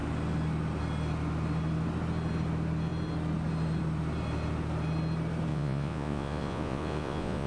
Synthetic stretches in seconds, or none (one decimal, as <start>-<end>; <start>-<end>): 5.5-7.5

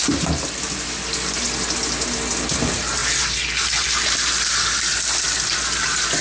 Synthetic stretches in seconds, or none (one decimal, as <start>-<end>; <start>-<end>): none

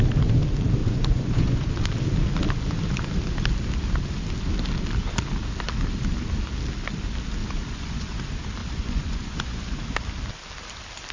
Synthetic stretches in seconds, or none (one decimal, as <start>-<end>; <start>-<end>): 0.8-1.7; 7.4-8.2; 8.6-9.8

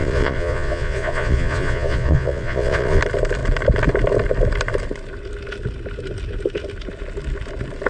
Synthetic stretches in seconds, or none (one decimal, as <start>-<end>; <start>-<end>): 0.0-3.0

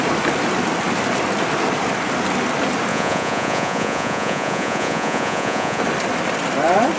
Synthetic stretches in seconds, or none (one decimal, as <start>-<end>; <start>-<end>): 2.9-5.8

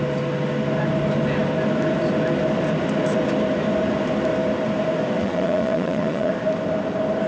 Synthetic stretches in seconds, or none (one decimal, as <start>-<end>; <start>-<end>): 5.2-6.3

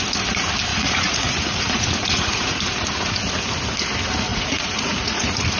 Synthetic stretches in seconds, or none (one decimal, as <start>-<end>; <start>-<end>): 0.7-2.6; 4.3-5.6